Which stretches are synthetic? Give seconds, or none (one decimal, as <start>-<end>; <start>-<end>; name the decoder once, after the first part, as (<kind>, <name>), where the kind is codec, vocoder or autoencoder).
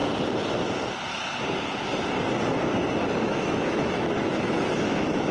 3.2-5.3 (autoencoder, DAC-VAE)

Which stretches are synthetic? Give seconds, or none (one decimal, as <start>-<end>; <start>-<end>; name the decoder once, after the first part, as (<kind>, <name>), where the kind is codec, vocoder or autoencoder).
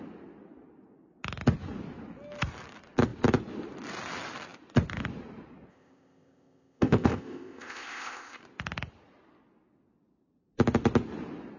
5.7-8.4 (codec, ZipCodec)